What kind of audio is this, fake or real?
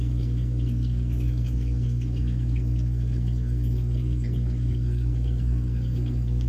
fake